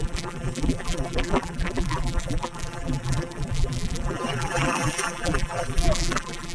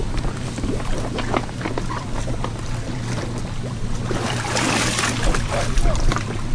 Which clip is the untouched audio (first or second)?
second